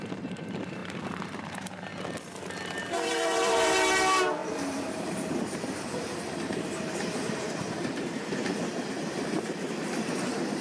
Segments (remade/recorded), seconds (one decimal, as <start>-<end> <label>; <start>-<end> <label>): 0.0-1.9 remade; 1.9-2.8 recorded; 2.8-10.6 remade

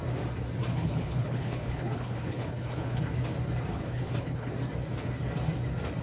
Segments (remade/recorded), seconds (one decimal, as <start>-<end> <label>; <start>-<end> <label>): 0.0-0.7 recorded; 0.7-3.0 remade; 3.0-3.7 recorded; 3.7-4.5 remade; 4.5-6.0 recorded

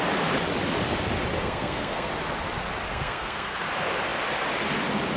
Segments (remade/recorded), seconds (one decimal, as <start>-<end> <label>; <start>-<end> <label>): 0.0-1.4 recorded; 1.4-2.1 remade; 2.1-2.9 recorded; 2.9-3.6 remade; 3.6-5.2 recorded

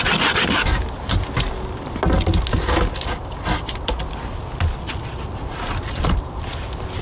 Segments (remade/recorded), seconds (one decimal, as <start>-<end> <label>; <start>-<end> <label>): 0.0-7.0 recorded

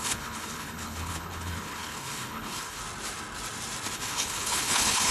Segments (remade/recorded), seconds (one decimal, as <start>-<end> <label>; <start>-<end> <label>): 0.0-2.8 remade; 2.8-3.9 recorded; 3.9-5.1 remade

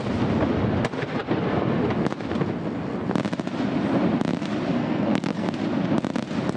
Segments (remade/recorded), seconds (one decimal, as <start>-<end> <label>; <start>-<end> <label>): 0.0-4.8 recorded; 4.8-5.5 remade; 5.5-6.6 recorded

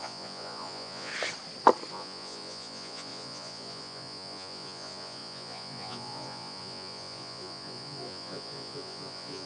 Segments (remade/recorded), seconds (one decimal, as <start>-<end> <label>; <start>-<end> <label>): 0.0-1.1 remade; 1.1-1.9 recorded; 1.9-9.5 remade